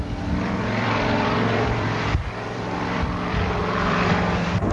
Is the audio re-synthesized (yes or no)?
yes